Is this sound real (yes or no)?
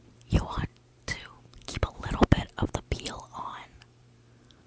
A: no